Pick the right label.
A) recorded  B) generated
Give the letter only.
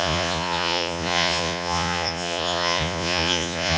B